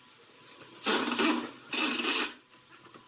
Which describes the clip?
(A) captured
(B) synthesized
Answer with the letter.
A